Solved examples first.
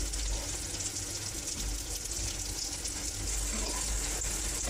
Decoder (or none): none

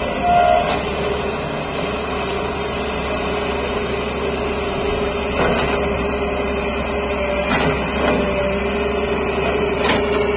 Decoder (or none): none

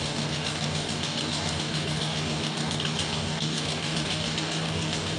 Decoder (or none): codec, DAC